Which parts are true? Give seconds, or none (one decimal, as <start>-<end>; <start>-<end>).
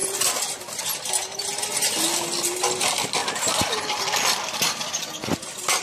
0.0-5.8